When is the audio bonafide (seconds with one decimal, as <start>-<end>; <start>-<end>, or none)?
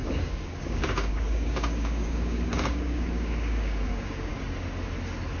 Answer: 4.3-5.4